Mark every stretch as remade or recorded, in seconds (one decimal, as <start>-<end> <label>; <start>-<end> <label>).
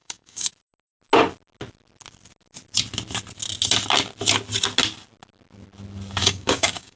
0.0-0.5 remade; 0.5-6.2 recorded; 6.2-7.0 remade